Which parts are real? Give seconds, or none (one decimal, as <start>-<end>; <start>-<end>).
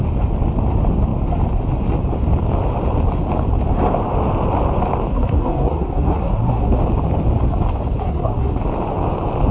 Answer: 0.0-5.1; 6.8-8.0; 8.5-9.5